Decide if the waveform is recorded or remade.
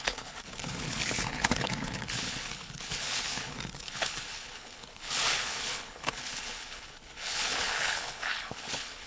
remade